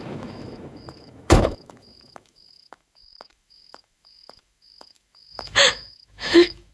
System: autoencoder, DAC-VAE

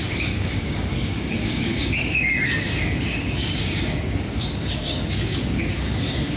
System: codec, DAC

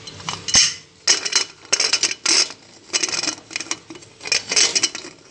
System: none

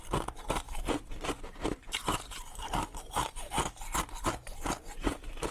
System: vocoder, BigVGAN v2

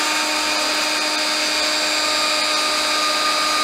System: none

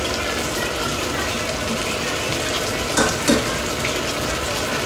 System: none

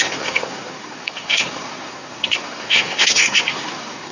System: codec, SNAC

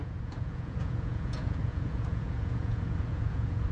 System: vocoder, Vocos